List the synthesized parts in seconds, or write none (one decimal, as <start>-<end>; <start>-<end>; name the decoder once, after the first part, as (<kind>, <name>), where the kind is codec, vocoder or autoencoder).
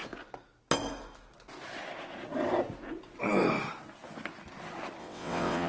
5.0-5.7 (vocoder, WaveNeXt)